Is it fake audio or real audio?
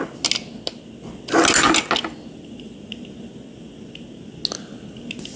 real